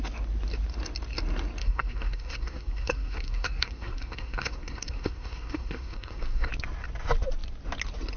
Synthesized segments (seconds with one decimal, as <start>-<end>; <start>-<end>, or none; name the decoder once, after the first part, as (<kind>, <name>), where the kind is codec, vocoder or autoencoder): 1.6-6.5 (codec, SNAC)